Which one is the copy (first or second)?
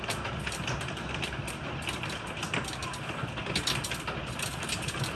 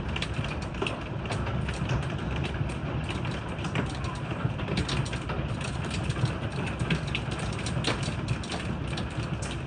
second